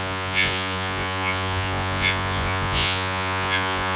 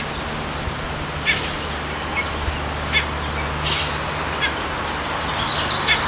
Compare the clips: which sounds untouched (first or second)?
second